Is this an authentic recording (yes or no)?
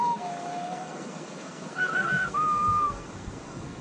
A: no